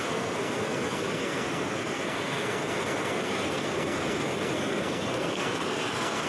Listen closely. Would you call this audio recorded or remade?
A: remade